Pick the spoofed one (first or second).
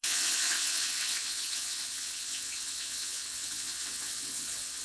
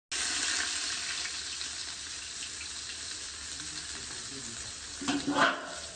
first